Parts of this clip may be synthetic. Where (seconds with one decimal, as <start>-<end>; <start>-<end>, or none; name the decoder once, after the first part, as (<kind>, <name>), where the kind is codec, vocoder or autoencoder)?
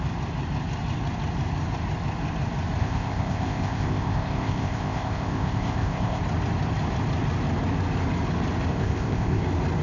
2.8-6.2 (codec, ZipCodec); 8.7-9.4